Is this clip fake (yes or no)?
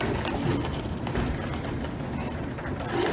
no